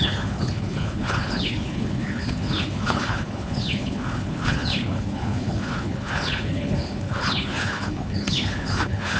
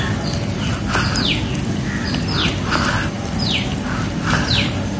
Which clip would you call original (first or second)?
second